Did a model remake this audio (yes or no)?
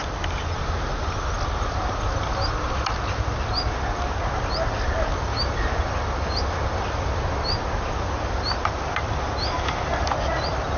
no